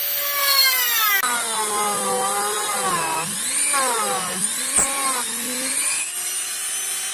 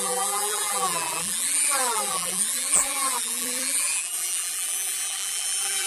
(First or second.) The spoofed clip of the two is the second